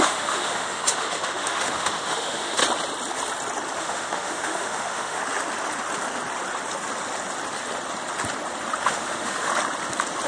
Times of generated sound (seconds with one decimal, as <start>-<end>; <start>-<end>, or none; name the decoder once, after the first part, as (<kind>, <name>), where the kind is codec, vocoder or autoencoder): 0.0-2.6 (autoencoder, DAC-VAE); 3.8-5.2; 8.8-9.5